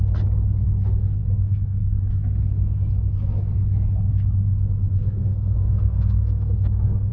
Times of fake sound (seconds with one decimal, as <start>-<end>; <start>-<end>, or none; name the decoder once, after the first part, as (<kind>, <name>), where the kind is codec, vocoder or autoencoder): 1.2-2.0 (codec, SNAC); 5.2-7.1